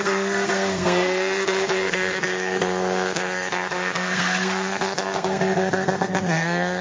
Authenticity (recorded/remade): remade